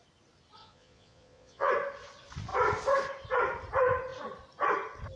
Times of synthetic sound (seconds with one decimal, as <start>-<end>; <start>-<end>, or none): 0.6-1.7